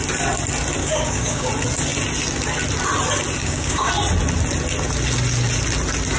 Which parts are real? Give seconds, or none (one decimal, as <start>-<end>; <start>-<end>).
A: 0.0-0.8; 1.5-3.4; 3.9-6.2

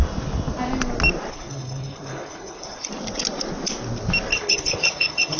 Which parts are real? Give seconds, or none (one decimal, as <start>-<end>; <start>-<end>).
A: 0.0-1.3; 2.9-4.3

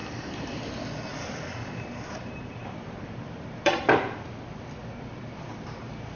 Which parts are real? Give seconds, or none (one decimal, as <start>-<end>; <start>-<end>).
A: 0.6-1.1; 3.8-6.2

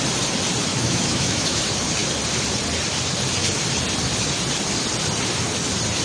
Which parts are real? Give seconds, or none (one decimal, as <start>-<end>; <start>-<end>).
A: 0.0-0.7; 1.6-6.0